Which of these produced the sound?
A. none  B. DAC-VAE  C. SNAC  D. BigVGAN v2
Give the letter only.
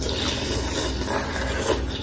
A